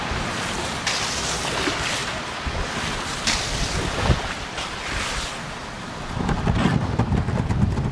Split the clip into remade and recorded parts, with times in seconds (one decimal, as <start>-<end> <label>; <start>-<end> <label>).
0.0-7.9 recorded